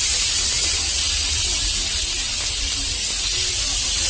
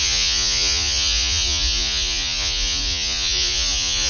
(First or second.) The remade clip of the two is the second